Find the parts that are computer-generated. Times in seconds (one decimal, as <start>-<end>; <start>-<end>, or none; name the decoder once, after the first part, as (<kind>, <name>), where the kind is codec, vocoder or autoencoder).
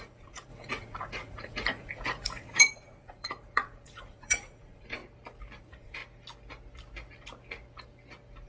0.0-5.0 (vocoder, Vocos); 5.6-6.0